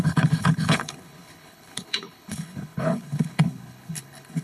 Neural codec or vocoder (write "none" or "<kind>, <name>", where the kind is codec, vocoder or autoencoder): codec, HILCodec